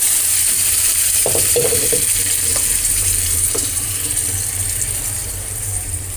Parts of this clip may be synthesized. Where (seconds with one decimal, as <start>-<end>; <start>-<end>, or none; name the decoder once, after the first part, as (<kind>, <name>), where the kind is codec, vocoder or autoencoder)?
1.2-1.7 (vocoder, BigVGAN v2); 2.5-4.1; 5.2-6.2